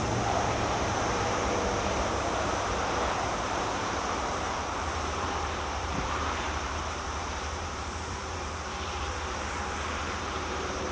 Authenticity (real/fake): fake